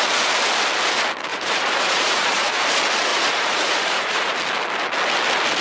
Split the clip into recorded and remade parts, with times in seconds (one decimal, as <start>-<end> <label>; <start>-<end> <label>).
0.0-1.3 recorded; 1.3-2.6 remade; 2.6-3.1 recorded; 3.1-4.3 remade; 4.3-5.6 recorded